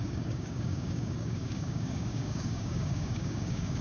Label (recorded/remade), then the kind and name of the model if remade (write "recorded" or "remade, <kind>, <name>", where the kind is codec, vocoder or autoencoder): remade, codec, DAC